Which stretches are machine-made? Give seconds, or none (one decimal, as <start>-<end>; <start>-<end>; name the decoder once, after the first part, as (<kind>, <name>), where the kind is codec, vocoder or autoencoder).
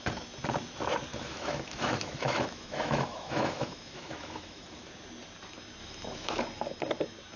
1.1-4.9 (autoencoder, DAC-VAE); 5.8-6.4